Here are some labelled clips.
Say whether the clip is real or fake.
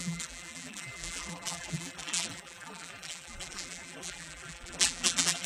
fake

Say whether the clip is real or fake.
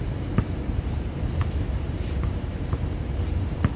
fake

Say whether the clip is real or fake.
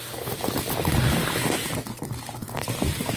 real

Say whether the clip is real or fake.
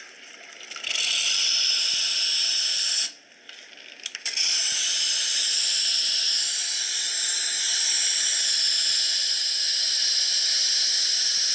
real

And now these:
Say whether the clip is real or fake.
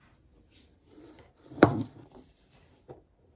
fake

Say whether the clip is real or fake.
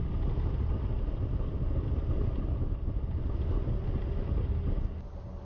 real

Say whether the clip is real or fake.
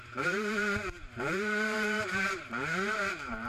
fake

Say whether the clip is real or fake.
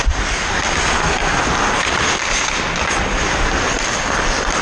real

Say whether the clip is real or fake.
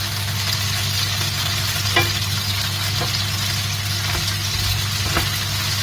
real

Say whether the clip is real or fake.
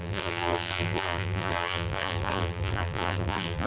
fake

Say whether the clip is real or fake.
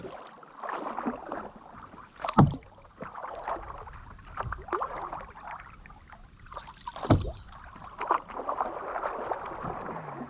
real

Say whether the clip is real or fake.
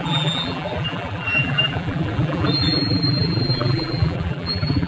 fake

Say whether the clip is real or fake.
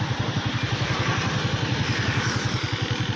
real